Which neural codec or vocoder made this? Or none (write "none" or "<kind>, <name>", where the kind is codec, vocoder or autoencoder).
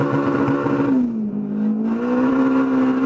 none